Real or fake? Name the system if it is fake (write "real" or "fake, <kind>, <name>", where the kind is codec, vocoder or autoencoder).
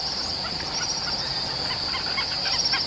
real